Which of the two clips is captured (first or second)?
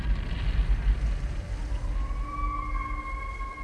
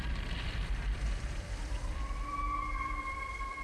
first